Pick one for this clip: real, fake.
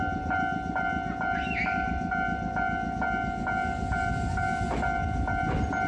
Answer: real